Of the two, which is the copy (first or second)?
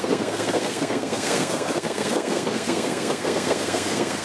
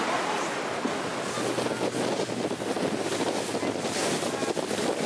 first